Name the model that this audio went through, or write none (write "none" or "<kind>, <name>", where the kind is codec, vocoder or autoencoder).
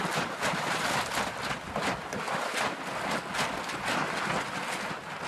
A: none